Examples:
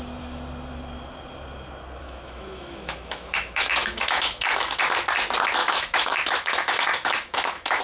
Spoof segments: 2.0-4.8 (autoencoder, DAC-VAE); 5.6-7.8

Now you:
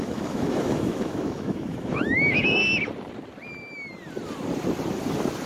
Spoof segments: 0.0-2.6 (autoencoder, DAC-VAE)

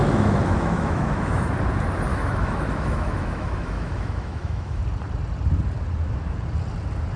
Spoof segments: 0.0-1.5 (autoencoder, DAC-VAE); 2.1-4.8

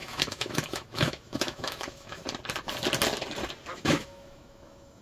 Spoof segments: 0.0-2.2 (autoencoder, DAC-VAE); 3.7-5.0

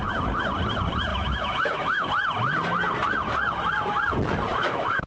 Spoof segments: 1.1-2.1 (autoencoder, DAC-VAE); 4.5-5.1